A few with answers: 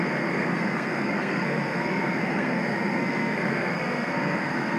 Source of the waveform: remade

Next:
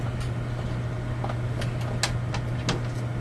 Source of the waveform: recorded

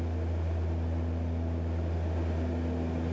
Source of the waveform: recorded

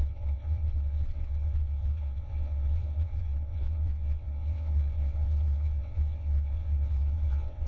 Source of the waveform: remade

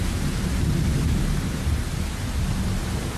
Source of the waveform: recorded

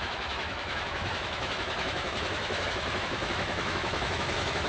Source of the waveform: remade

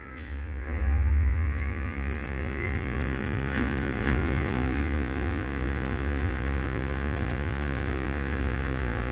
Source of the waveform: remade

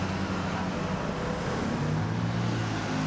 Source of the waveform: recorded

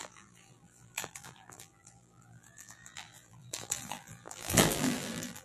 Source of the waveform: remade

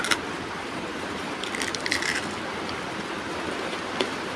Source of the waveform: remade